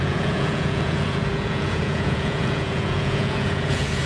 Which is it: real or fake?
fake